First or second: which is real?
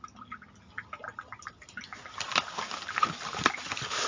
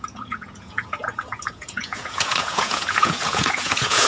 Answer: first